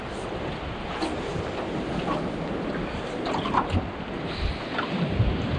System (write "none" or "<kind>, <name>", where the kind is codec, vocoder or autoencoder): none